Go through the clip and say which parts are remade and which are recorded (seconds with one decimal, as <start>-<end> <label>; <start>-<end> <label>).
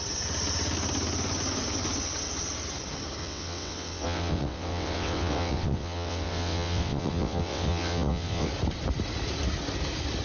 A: 0.0-3.2 recorded; 3.2-8.5 remade; 8.5-10.2 recorded